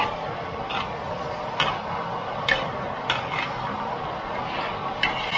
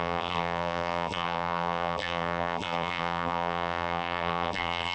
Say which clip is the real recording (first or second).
first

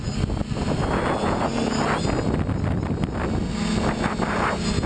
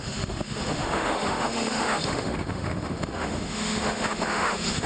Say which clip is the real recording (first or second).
first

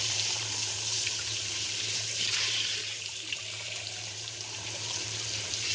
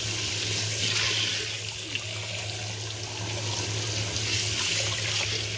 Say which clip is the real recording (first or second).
second